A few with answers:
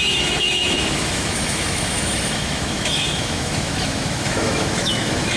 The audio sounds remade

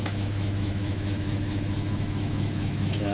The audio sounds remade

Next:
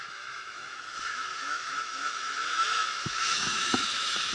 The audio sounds remade